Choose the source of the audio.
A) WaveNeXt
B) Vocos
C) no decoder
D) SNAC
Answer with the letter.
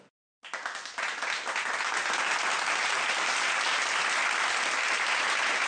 C